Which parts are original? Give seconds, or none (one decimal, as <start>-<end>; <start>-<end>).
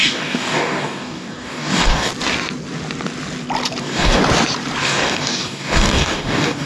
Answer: 2.1-3.8; 4.2-4.8